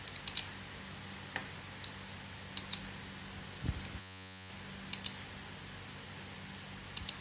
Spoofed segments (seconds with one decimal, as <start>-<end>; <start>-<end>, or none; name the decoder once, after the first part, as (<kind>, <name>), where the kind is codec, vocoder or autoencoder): 4.0-4.5 (vocoder, Vocos)